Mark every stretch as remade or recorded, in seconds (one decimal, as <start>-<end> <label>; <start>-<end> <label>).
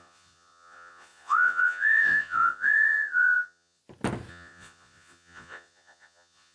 0.0-3.8 remade; 3.8-4.3 recorded; 4.3-6.5 remade